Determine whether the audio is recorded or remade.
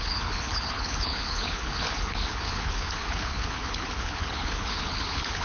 remade